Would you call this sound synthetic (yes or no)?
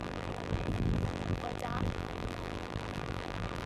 yes